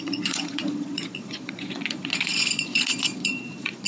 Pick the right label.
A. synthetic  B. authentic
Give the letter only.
A